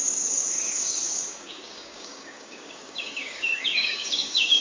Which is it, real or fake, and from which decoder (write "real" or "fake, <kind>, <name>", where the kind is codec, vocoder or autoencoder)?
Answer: fake, codec, DAC